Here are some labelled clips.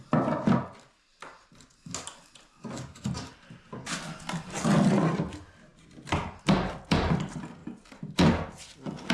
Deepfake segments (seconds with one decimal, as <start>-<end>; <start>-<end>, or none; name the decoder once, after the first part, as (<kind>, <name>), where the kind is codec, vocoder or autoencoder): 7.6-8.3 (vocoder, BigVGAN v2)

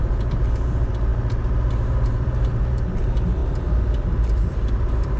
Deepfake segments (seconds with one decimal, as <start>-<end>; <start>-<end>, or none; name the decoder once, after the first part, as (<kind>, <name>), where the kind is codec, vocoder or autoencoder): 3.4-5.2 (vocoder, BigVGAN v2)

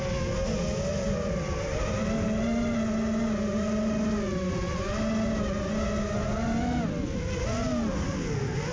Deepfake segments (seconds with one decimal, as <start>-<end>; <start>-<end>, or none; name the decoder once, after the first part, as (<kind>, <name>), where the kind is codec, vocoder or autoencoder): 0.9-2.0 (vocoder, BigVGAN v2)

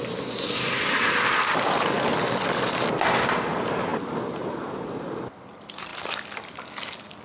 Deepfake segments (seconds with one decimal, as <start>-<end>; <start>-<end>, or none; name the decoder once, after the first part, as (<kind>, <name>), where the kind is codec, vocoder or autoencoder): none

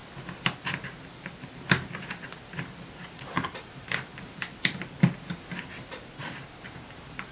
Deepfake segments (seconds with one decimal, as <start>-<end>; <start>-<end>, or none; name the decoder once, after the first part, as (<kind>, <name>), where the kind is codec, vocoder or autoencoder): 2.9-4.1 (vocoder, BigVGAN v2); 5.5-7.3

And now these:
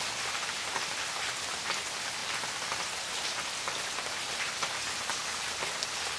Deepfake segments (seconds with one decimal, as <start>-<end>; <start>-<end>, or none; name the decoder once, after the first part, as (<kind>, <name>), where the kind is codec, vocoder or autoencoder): none